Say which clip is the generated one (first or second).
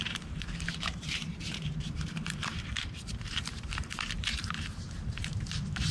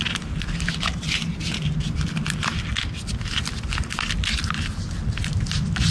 first